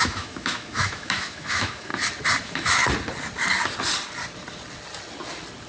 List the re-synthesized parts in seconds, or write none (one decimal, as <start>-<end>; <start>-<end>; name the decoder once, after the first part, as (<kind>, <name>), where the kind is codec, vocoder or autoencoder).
0.0-1.9 (autoencoder, DAC-VAE); 2.4-2.8